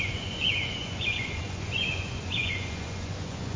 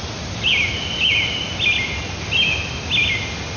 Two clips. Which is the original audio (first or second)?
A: second